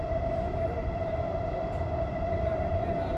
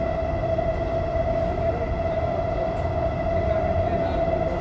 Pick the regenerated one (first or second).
first